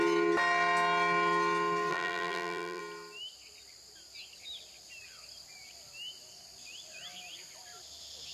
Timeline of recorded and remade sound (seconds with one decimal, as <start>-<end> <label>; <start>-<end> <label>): 0.0-1.9 recorded; 1.9-2.8 remade; 2.8-8.3 recorded